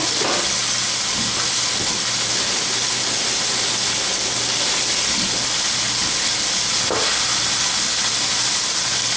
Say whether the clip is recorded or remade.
recorded